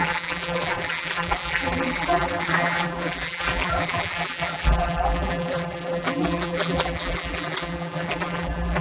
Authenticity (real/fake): fake